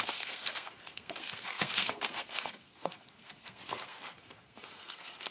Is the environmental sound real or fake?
fake